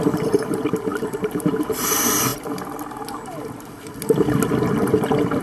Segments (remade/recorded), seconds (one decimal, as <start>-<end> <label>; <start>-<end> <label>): 0.0-5.4 recorded